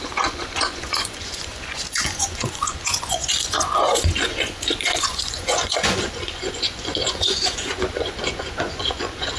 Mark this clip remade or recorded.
remade